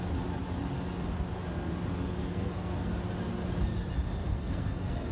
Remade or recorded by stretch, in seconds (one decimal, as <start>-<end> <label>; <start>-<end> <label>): 0.0-2.2 recorded; 2.2-2.9 remade; 2.9-4.2 recorded; 4.2-5.1 remade

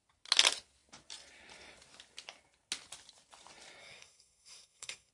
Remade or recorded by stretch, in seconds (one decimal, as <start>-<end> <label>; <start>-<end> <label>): 0.0-3.8 recorded; 3.8-5.1 remade

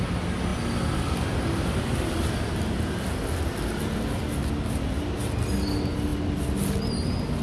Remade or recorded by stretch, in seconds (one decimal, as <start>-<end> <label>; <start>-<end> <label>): 0.0-7.4 recorded

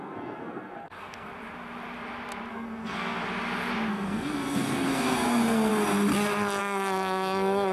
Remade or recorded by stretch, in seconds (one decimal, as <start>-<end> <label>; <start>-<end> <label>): 0.0-1.3 remade; 1.3-2.5 recorded; 2.5-3.2 remade; 3.2-3.9 recorded; 3.9-5.7 remade; 5.7-6.6 recorded; 6.6-7.7 remade

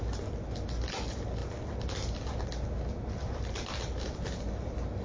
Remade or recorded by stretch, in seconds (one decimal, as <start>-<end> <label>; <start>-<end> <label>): 0.0-5.0 recorded

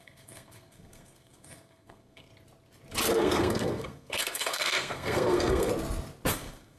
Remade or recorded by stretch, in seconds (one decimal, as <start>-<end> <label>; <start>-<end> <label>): 0.0-2.3 remade; 2.3-3.1 recorded; 3.1-5.7 remade; 5.7-6.3 recorded; 6.3-6.8 remade

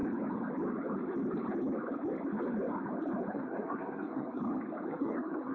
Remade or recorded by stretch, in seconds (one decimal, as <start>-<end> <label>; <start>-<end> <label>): 0.0-3.3 recorded; 3.3-4.4 remade; 4.4-4.9 recorded; 4.9-5.5 remade